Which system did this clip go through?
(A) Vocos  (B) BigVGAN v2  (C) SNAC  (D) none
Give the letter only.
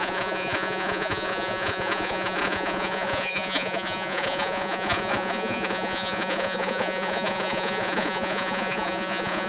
A